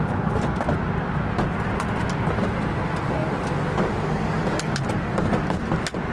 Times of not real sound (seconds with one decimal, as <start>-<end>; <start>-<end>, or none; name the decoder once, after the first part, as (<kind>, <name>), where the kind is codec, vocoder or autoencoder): none

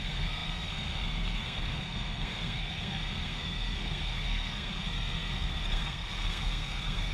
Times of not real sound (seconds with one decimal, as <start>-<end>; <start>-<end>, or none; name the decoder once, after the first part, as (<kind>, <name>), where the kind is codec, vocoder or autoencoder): 0.0-7.1 (codec, SNAC)

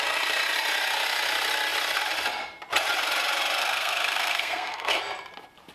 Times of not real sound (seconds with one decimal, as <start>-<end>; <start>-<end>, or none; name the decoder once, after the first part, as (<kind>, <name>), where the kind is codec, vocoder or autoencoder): 3.6-5.0 (codec, SNAC)

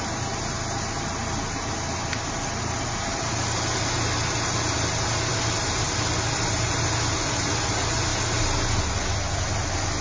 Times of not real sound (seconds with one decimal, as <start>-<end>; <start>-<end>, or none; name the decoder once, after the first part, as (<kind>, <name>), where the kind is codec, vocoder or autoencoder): none

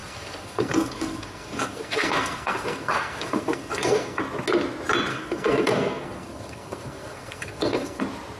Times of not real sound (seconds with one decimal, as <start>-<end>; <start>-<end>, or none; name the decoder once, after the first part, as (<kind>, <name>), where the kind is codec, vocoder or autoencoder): 0.0-4.2 (codec, SNAC); 5.1-8.0